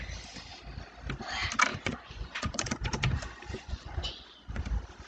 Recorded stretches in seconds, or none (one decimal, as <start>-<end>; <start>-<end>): 0.0-1.7; 4.6-5.1